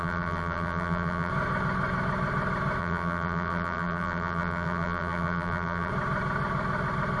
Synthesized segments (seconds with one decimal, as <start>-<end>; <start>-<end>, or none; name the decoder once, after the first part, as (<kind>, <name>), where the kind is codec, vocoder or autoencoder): 0.0-1.3 (vocoder, BigVGAN v2); 2.8-5.9